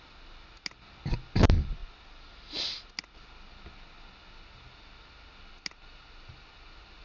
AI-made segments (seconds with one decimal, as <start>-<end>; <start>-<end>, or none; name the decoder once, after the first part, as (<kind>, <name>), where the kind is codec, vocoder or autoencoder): none